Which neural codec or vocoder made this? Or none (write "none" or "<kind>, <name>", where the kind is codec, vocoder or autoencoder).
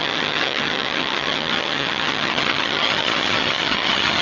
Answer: vocoder, HiFi-GAN